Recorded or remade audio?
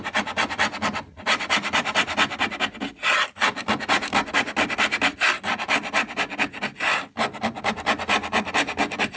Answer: recorded